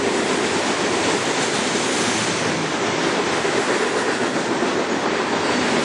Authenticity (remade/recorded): recorded